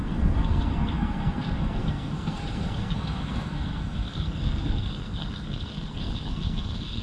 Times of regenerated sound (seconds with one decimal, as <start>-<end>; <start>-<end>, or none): 0.0-7.0

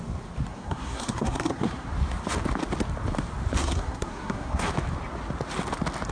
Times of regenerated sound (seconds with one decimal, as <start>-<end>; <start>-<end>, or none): 0.5-1.9; 3.6-4.7